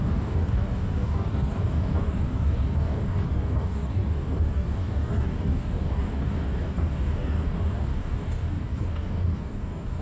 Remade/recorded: remade